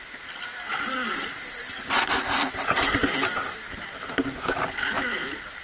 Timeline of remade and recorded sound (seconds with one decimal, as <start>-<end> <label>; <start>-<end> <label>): 0.0-5.6 recorded